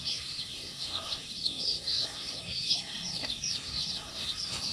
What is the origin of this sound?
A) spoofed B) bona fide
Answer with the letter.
A